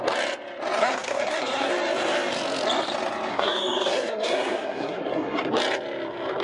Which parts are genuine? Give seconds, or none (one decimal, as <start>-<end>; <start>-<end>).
0.0-0.8; 1.7-3.3; 5.5-6.4